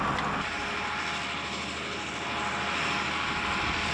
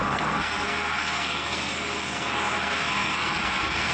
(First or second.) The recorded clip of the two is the first